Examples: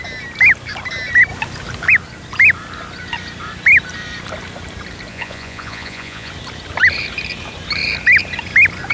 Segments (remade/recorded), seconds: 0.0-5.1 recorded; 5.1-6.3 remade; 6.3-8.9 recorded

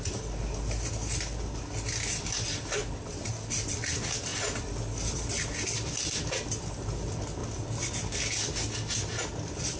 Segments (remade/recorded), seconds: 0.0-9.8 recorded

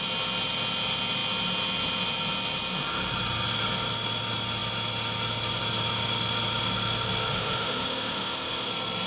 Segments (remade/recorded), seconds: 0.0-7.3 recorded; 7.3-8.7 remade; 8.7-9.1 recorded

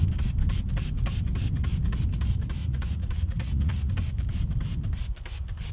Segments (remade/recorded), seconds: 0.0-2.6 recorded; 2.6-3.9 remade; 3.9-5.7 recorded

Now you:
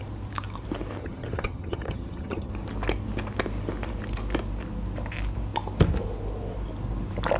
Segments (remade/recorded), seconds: 0.0-1.0 recorded; 1.0-2.5 remade; 2.5-7.4 recorded

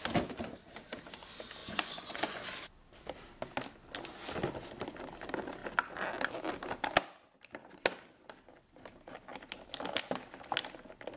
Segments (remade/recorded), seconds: 0.0-1.6 recorded; 1.6-2.4 remade; 2.4-11.2 recorded

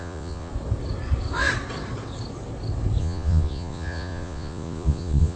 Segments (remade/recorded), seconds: 0.0-0.5 remade; 0.5-3.0 recorded; 3.0-5.4 remade

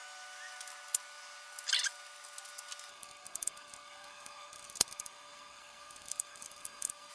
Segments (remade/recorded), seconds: 0.0-2.9 recorded; 2.9-7.1 remade